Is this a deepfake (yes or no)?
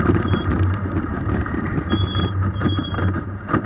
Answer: yes